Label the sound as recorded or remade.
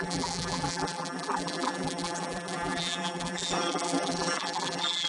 remade